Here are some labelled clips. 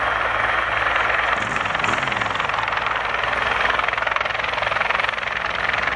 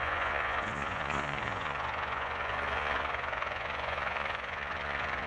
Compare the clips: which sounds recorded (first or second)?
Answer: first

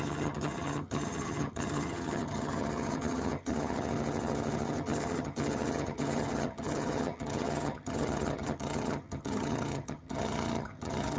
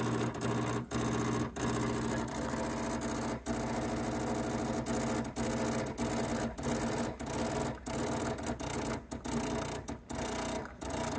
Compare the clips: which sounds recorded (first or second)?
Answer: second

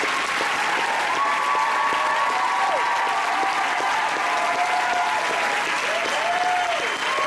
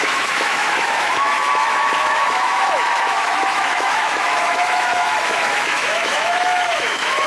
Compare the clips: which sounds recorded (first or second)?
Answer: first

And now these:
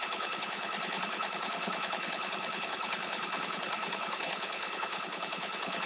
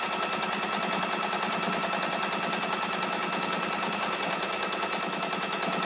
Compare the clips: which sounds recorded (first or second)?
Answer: second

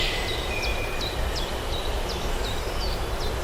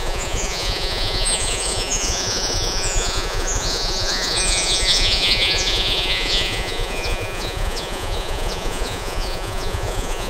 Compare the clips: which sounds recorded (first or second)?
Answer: first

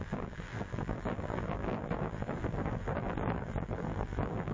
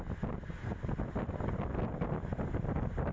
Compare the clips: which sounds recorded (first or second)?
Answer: second